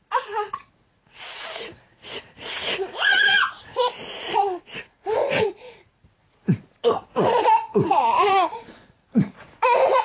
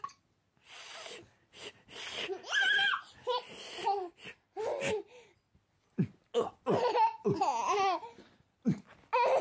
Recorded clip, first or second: second